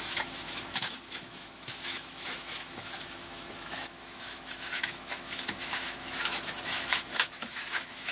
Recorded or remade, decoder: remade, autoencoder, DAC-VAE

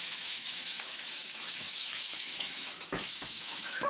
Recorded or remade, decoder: remade, autoencoder, DAC-VAE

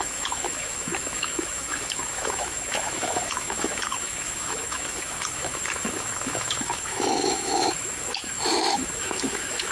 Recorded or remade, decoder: remade, autoencoder, DAC-VAE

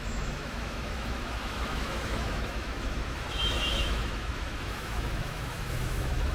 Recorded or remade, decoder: remade, autoencoder, DAC-VAE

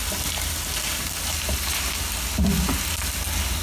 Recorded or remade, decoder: recorded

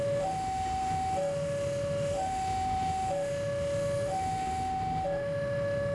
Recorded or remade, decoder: remade, autoencoder, DAC-VAE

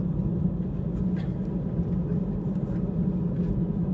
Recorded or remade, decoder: recorded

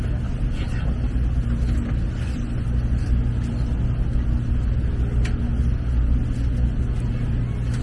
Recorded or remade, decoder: recorded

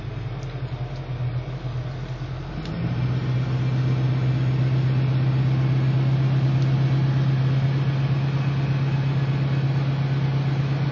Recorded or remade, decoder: recorded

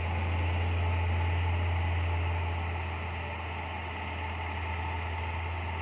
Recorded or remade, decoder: recorded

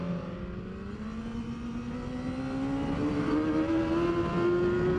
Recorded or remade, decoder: recorded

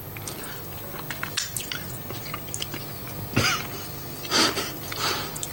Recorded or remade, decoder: recorded